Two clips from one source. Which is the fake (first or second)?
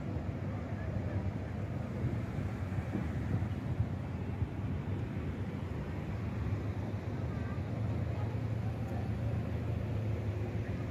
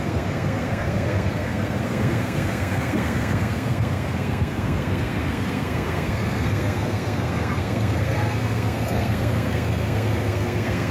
second